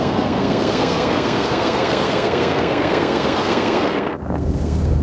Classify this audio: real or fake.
fake